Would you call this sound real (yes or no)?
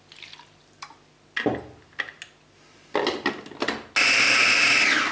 yes